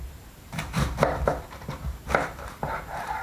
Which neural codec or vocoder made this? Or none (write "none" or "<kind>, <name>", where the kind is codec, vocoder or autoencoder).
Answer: vocoder, BigVGAN v2